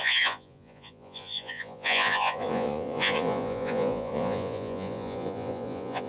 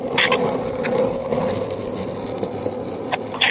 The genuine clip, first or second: second